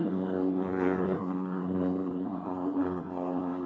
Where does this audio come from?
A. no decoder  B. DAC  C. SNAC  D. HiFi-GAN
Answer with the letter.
C